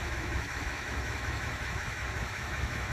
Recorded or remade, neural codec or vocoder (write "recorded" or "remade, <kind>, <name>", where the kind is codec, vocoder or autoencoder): remade, autoencoder, DAC-VAE